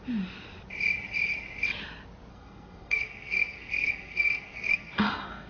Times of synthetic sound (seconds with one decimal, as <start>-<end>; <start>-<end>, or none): 2.3-5.5